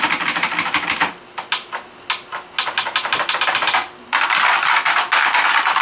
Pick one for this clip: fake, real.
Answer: real